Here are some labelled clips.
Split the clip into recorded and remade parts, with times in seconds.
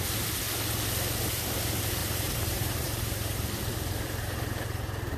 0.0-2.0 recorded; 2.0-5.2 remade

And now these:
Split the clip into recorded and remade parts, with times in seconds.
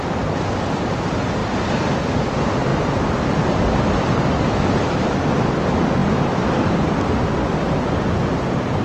0.0-2.7 recorded; 2.7-5.2 remade; 5.2-8.8 recorded